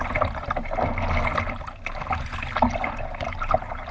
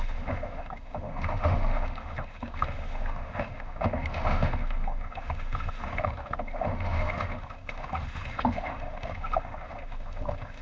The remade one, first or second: second